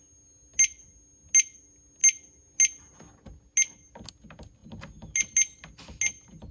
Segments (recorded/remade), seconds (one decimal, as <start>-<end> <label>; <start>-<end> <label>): 0.0-6.5 recorded